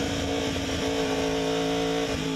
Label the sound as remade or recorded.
recorded